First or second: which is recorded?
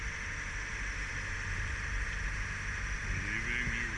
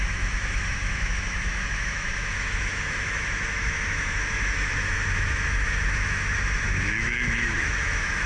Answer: first